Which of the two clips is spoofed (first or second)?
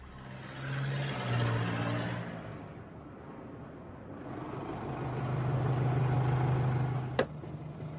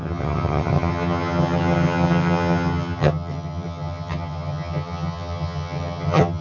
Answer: second